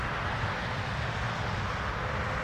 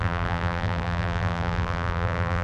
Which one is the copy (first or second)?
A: second